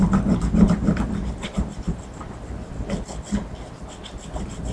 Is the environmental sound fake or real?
real